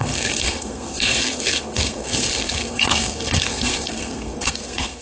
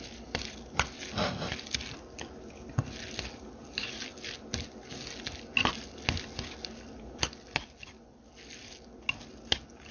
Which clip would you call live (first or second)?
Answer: second